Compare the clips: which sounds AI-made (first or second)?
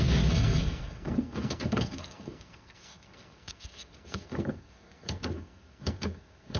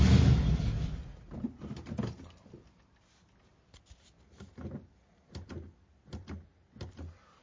first